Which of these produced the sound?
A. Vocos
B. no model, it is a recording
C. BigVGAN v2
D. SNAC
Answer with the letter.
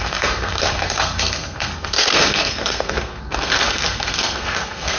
D